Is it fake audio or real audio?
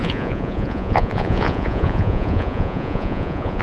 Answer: fake